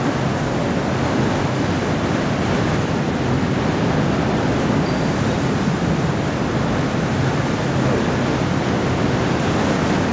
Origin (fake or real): real